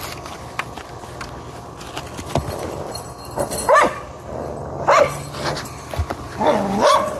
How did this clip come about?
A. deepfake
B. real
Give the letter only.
B